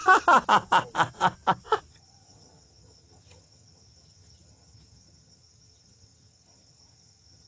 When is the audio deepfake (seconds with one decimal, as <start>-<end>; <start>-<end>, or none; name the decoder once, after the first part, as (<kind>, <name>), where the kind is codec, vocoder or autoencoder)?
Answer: 1.9-7.5 (vocoder, HiFi-GAN)

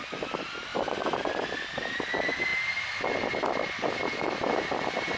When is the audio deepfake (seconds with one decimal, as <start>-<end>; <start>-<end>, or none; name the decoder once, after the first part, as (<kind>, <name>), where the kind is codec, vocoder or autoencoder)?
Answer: none

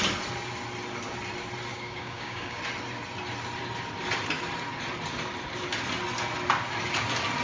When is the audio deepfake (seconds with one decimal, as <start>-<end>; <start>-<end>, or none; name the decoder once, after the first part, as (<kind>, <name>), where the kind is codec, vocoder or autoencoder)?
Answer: 1.7-2.6 (codec, DAC)

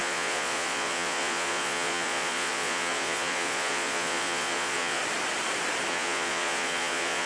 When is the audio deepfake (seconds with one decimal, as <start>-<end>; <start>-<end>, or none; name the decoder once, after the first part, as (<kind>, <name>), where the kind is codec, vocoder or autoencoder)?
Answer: 0.0-5.0 (vocoder, Vocos); 5.9-7.3

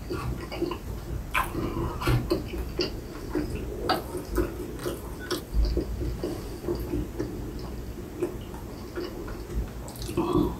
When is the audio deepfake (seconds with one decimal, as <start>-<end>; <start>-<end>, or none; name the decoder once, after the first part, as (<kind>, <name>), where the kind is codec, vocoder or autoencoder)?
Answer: none

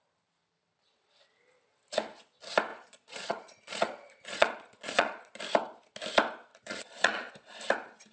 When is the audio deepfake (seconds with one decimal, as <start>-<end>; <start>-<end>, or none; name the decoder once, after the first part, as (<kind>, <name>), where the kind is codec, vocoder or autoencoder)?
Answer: 2.7-5.4 (vocoder, Vocos); 6.5-7.3